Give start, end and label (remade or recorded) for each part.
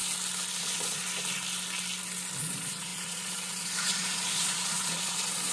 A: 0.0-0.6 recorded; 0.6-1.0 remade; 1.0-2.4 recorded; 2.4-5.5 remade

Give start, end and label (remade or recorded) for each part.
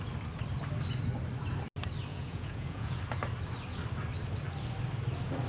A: 0.0-2.1 recorded; 2.1-3.0 remade; 3.0-5.5 recorded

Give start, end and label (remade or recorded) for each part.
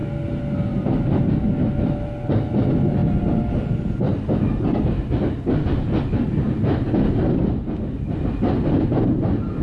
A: 0.0-9.6 recorded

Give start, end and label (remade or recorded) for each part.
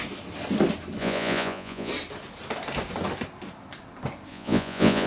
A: 0.0-1.0 recorded; 1.0-1.9 remade; 1.9-4.3 recorded; 4.3-5.1 remade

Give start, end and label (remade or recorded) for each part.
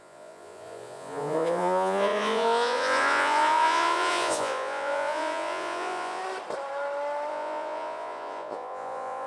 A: 0.0-6.2 remade; 6.2-7.3 recorded; 7.3-9.3 remade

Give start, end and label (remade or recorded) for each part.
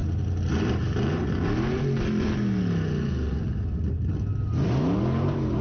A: 0.0-5.6 recorded